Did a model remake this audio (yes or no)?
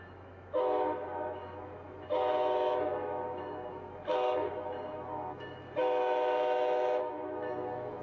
yes